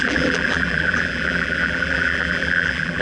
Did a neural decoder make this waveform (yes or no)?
yes